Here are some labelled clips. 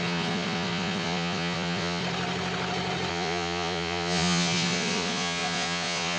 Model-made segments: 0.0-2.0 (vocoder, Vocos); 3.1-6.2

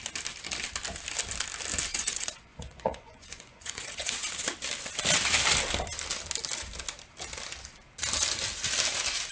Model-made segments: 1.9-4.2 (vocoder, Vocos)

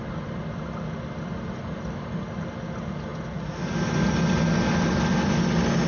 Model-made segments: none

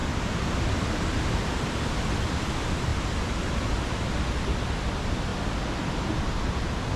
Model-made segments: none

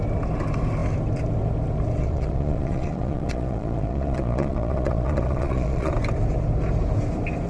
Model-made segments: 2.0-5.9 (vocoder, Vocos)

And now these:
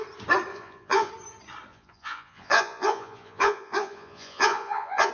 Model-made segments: 0.5-1.1 (vocoder, Vocos); 1.7-5.1